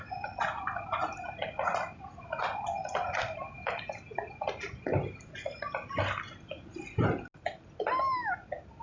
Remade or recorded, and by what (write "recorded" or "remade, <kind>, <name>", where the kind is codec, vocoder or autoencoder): recorded